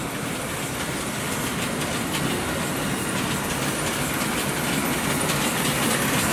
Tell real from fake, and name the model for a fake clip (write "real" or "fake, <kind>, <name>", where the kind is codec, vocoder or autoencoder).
real